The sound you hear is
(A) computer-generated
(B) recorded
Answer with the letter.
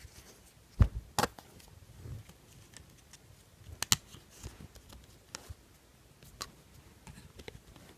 B